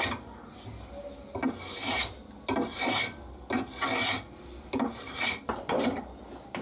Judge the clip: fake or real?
real